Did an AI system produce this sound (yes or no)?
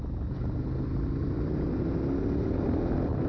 no